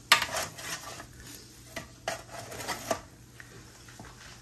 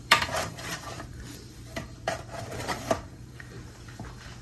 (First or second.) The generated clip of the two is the second